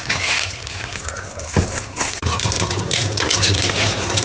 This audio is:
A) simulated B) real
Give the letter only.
A